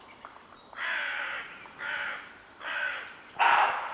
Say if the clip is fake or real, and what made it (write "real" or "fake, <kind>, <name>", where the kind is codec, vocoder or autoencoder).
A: fake, vocoder, BigVGAN v2